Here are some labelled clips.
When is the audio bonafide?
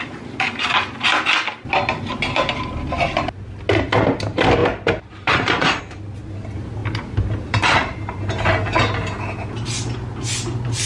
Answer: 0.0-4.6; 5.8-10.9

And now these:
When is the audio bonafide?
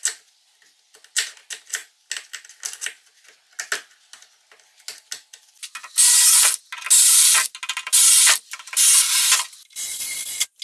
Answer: 0.0-10.6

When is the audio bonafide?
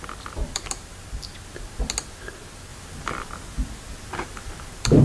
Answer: 0.0-0.4; 1.4-2.7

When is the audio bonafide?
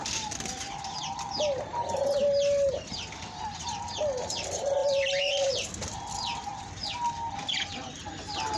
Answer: 0.0-4.8; 5.5-6.5; 8.0-8.6